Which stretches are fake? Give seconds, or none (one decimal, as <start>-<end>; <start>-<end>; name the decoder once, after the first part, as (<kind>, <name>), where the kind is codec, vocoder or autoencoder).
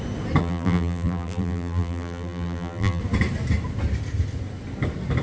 0.4-3.0 (vocoder, BigVGAN v2)